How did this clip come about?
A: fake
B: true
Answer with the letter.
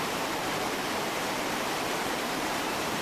A